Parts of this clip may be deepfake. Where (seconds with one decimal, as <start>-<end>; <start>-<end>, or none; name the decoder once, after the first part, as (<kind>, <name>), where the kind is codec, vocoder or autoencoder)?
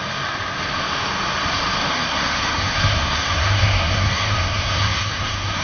1.9-5.6 (codec, SNAC)